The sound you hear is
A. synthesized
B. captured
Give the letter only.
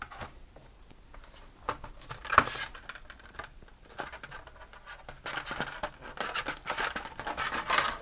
B